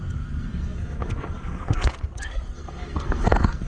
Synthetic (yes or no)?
yes